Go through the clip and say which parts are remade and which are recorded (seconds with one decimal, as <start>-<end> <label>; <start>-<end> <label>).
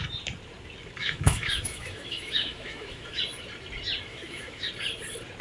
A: 0.0-1.0 recorded; 1.0-3.2 remade; 3.2-4.1 recorded; 4.1-4.7 remade; 4.7-5.4 recorded